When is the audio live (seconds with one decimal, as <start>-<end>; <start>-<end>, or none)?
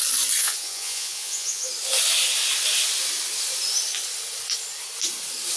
0.0-0.4; 1.7-5.6